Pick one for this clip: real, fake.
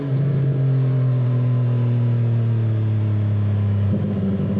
real